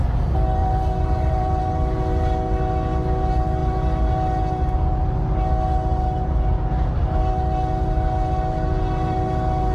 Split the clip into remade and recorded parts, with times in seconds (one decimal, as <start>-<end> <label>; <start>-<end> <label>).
0.0-0.6 recorded; 0.6-1.6 remade; 1.6-9.7 recorded